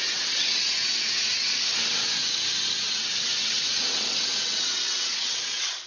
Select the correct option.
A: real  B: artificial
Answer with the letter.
B